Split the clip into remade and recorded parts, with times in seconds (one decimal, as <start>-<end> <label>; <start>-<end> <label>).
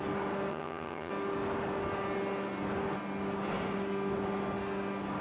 0.0-0.5 recorded; 0.5-1.1 remade; 1.1-5.2 recorded